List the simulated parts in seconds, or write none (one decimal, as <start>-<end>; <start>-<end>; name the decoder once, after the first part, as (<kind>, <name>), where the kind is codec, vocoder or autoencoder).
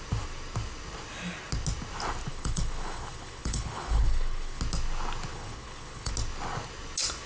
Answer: 2.3-4.6 (codec, HILCodec); 5.3-6.1